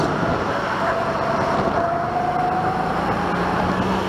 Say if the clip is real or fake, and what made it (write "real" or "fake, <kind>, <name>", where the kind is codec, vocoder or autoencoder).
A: real